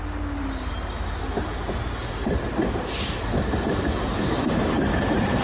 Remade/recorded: remade